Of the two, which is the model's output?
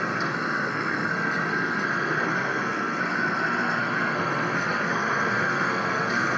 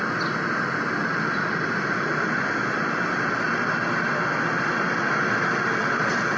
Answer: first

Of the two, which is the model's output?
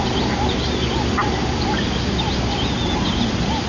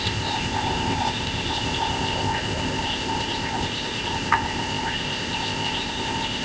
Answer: second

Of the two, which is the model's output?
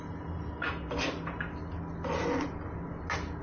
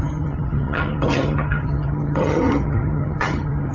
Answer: second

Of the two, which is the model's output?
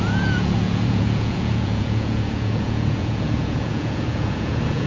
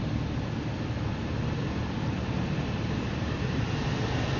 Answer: first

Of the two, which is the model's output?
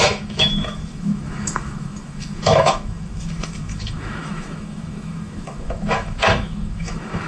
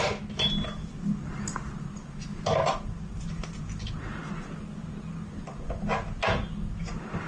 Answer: first